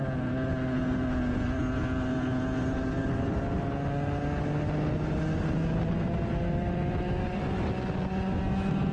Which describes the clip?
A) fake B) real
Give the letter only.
B